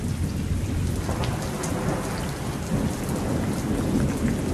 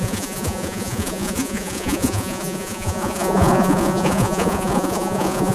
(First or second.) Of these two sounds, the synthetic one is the second